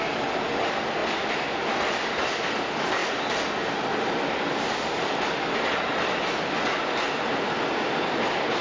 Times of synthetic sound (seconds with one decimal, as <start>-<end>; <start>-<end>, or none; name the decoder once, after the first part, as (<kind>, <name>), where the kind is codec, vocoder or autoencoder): 1.0-2.3 (vocoder, BigVGAN v2); 3.0-5.1